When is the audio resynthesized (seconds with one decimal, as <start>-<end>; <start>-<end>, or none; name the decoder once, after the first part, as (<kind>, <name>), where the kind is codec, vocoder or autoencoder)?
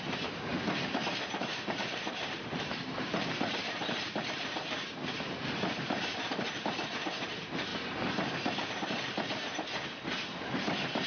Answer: 0.0-0.5 (vocoder, BigVGAN v2); 1.4-7.7; 8.7-11.1